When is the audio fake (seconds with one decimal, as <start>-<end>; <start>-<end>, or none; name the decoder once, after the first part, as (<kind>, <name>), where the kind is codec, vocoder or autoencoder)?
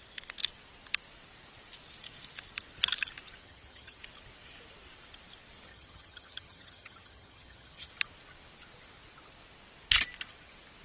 3.4-4.0 (vocoder, HiFi-GAN); 5.7-7.9